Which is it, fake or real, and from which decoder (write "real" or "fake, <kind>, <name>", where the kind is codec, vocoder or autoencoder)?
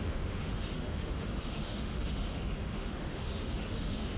fake, autoencoder, DAC-VAE